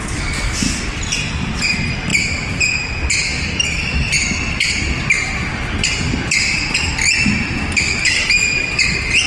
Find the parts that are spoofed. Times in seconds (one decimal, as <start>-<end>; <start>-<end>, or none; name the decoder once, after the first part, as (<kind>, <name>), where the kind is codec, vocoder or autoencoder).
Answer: none